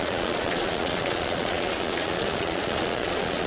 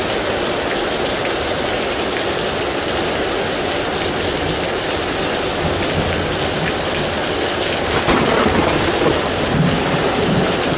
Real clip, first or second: second